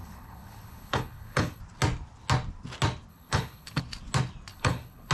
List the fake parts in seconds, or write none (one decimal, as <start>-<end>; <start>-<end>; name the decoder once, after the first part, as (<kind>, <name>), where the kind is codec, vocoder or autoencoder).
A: 0.0-1.6 (codec, HILCodec); 3.1-3.8; 4.5-5.1